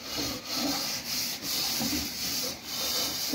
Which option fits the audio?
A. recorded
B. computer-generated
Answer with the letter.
B